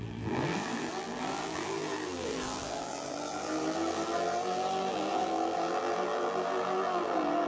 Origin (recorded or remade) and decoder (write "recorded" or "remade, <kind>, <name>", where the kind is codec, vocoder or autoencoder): remade, vocoder, BigVGAN v2